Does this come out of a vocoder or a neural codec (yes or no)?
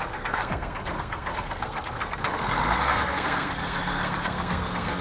yes